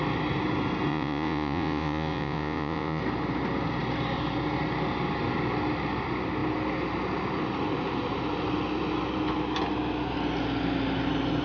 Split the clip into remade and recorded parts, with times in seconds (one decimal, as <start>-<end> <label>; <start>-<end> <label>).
0.0-0.9 recorded; 0.9-3.0 remade; 3.0-11.4 recorded

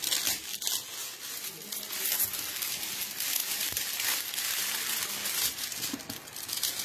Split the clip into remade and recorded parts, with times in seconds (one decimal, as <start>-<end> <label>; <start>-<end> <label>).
0.0-6.8 recorded

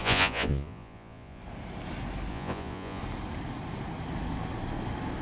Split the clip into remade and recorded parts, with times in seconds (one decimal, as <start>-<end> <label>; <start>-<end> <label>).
0.0-1.4 remade; 1.4-2.3 recorded; 2.3-3.0 remade; 3.0-5.2 recorded